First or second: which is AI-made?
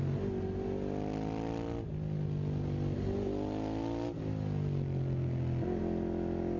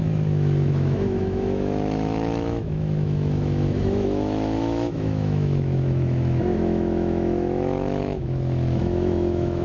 second